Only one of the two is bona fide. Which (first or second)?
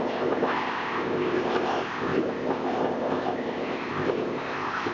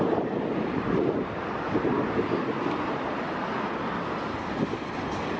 second